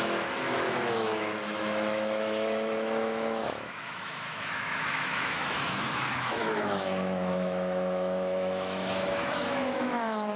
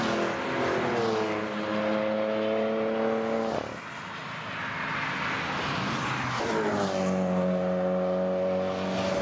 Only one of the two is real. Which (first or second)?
second